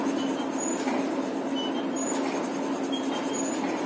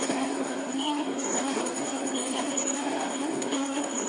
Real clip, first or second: first